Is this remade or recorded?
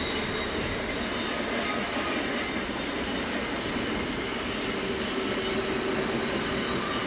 recorded